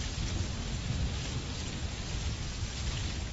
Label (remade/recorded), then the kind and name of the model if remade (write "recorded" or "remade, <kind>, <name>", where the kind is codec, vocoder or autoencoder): recorded